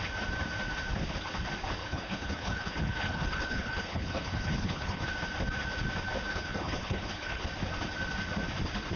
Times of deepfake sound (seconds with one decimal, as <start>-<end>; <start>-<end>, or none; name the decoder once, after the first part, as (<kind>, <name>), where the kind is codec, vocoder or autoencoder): 1.8-5.1 (codec, HILCodec); 6.3-7.4

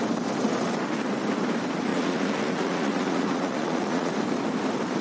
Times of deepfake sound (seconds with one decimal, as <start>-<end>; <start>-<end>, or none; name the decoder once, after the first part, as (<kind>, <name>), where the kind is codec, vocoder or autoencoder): 1.9-4.1 (vocoder, Vocos)